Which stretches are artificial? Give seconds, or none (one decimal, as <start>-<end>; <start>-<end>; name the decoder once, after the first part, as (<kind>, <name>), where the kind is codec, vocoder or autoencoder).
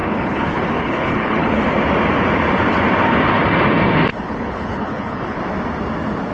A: 0.0-1.6 (codec, HILCodec); 4.1-5.4